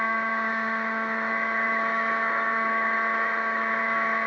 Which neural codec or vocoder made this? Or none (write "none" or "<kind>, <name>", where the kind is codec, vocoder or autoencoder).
autoencoder, DAC-VAE